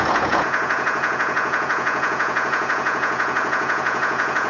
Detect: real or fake fake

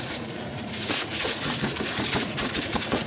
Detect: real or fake fake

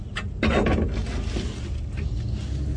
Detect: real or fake real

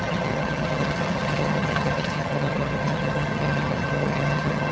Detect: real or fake fake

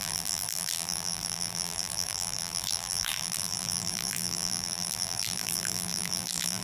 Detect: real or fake fake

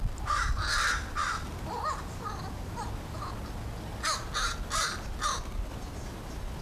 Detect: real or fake real